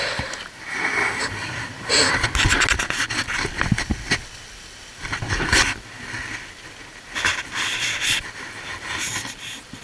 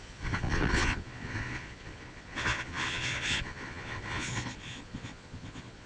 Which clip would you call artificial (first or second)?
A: second